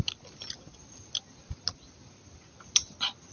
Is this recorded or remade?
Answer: recorded